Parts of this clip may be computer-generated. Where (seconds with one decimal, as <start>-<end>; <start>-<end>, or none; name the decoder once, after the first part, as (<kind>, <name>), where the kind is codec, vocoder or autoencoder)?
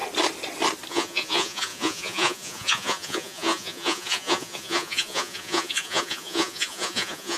0.9-7.4 (vocoder, Vocos)